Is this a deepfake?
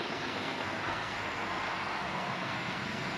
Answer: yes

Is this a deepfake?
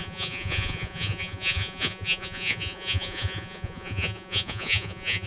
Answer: yes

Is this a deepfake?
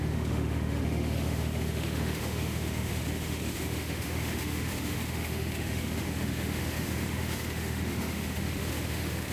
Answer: yes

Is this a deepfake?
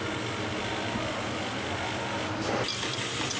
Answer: no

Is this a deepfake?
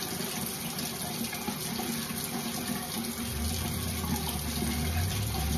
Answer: no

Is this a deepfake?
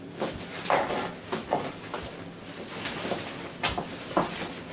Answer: no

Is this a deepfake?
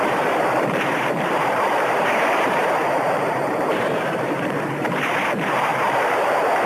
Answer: yes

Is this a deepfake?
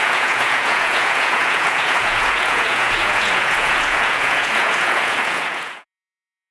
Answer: yes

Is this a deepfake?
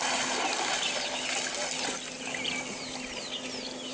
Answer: no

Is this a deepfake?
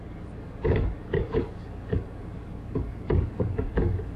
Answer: yes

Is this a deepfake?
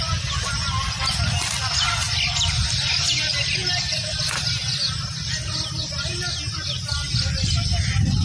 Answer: no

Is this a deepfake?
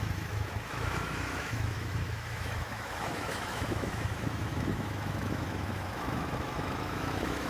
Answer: yes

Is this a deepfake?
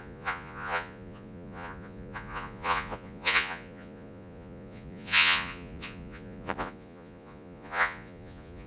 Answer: yes